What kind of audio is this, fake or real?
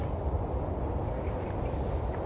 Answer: real